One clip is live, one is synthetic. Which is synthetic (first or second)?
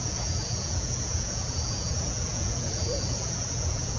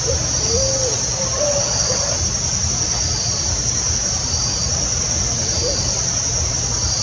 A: first